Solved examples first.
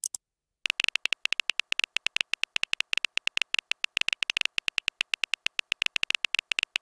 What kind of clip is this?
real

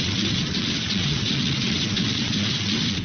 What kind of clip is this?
fake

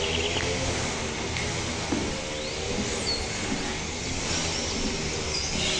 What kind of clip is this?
real